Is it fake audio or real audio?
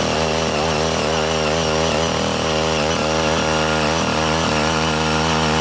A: real